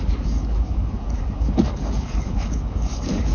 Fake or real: fake